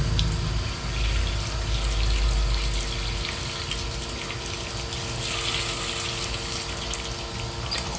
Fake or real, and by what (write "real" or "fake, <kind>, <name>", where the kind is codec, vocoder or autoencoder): real